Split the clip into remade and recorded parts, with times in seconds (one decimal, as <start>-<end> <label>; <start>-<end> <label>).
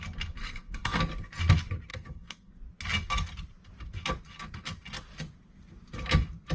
0.0-0.4 recorded; 0.4-1.0 remade; 1.0-1.9 recorded; 1.9-2.5 remade; 2.5-6.5 recorded